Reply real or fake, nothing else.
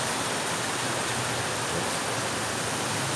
real